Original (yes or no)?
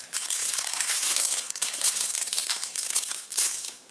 no